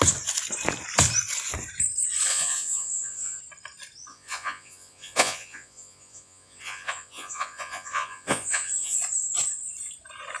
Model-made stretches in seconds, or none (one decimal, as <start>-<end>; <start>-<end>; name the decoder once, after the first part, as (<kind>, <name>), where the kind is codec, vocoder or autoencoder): 2.3-3.4 (vocoder, Vocos); 4.1-9.0